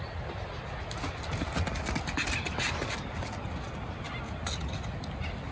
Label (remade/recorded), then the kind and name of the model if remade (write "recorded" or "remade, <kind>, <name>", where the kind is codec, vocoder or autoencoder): recorded